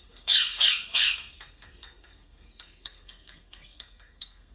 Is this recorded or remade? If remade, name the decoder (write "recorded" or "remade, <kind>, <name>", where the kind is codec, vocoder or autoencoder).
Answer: remade, codec, SNAC